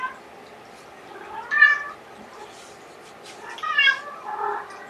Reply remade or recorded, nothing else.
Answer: recorded